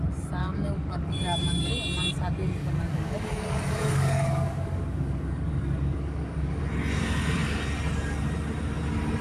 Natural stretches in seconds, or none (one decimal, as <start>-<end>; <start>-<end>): 0.0-0.4; 1.7-2.6; 6.6-9.2